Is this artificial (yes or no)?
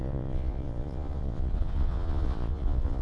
yes